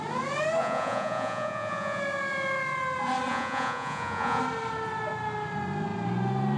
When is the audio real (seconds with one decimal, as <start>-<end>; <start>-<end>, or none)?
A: 0.0-0.6; 2.0-3.3; 4.4-6.6

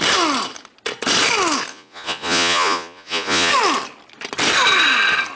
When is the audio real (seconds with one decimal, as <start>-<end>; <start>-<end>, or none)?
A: 0.0-1.7; 3.5-5.3

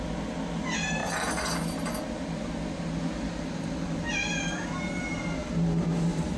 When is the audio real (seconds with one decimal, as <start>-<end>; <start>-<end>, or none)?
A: 0.0-6.4

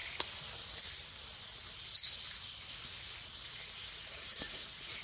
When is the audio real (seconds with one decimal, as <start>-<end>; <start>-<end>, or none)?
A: 0.0-4.0

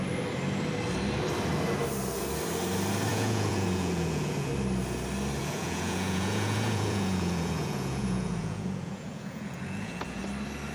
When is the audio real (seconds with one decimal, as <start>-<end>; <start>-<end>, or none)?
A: 0.0-3.1; 4.5-5.4; 10.2-10.7

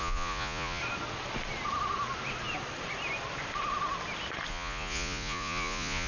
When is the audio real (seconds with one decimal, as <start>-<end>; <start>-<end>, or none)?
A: 0.8-4.5

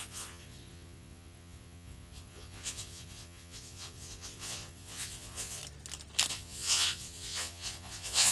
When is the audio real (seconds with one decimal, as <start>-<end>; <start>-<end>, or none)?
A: 5.6-6.3

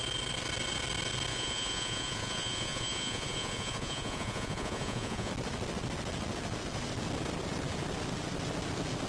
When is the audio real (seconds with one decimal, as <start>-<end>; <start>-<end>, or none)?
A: 0.0-1.3; 5.3-9.1